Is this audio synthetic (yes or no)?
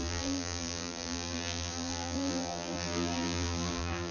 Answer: yes